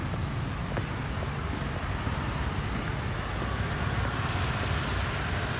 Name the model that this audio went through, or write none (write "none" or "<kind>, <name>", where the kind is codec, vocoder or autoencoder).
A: none